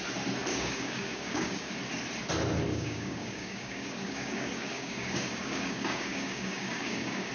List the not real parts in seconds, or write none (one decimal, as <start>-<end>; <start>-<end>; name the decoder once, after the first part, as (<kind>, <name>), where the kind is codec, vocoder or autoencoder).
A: 0.5-1.7 (codec, DAC); 2.7-7.3